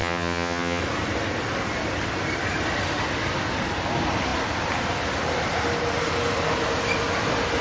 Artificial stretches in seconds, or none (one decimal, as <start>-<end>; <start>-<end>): 0.0-0.8

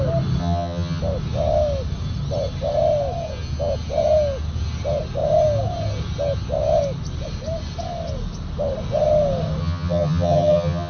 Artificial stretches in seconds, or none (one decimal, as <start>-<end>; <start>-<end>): 0.4-1.0; 9.6-10.9

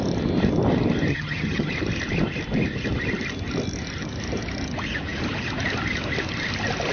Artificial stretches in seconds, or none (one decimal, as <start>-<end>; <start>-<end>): 1.1-1.7